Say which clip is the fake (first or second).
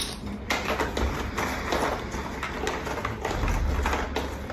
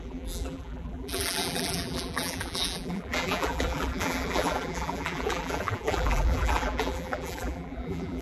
second